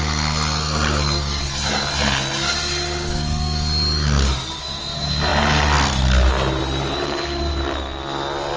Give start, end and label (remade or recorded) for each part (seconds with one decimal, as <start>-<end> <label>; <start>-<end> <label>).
0.0-8.6 recorded